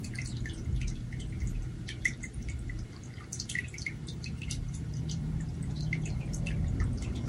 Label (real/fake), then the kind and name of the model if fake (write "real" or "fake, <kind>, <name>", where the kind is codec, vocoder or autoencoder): fake, vocoder, BigVGAN v2